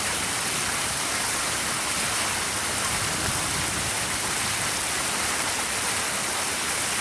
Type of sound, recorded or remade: recorded